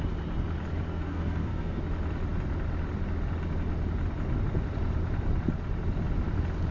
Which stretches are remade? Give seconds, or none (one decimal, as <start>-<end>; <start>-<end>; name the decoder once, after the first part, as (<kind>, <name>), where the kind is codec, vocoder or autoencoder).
0.9-1.8 (codec, SNAC)